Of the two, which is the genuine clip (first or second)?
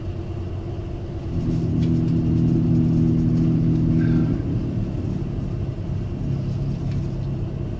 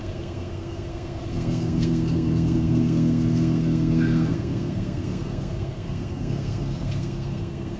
first